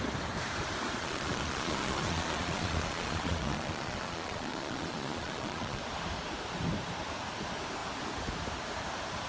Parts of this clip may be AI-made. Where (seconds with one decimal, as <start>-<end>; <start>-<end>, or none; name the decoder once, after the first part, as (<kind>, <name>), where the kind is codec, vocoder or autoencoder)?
1.0-5.8 (vocoder, Vocos)